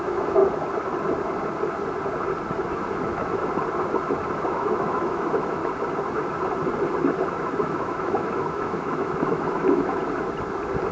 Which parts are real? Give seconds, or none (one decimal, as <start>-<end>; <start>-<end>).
0.4-2.7; 3.4-4.5; 5.6-7.3; 10.0-10.9